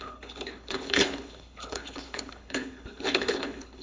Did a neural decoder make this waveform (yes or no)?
yes